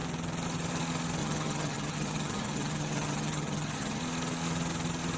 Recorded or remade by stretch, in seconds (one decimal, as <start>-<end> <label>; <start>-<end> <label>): 0.0-1.2 recorded; 1.2-4.0 remade; 4.0-5.2 recorded